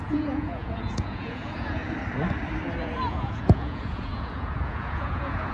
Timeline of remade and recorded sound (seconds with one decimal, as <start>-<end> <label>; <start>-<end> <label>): 0.0-1.8 remade; 1.8-3.1 recorded; 3.1-5.5 remade